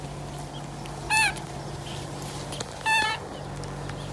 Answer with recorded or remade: recorded